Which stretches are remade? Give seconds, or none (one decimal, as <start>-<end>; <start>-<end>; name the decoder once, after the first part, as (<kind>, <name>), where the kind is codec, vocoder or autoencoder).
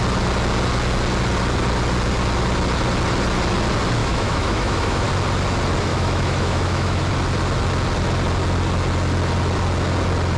4.0-5.1 (autoencoder, DAC-VAE); 5.9-7.1